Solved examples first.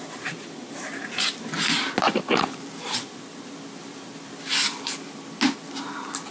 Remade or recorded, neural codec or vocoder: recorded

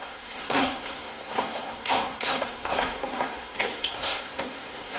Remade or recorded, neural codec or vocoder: remade, codec, SNAC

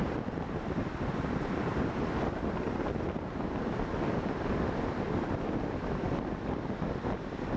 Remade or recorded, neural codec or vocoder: recorded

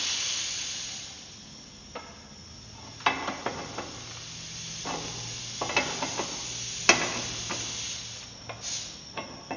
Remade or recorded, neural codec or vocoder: recorded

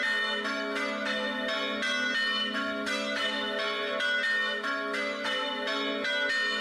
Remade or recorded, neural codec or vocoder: recorded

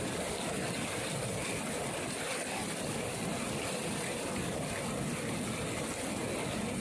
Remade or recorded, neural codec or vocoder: recorded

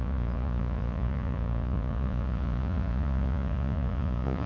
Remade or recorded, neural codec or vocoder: remade, vocoder, Vocos